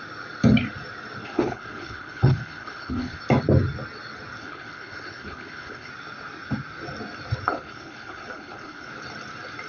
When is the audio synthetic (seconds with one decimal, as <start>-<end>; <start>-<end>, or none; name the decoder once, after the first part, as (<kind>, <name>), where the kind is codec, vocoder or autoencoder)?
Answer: 1.2-3.2 (codec, HILCodec); 4.4-5.9; 7.5-8.9